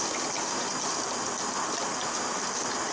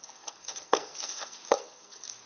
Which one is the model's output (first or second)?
second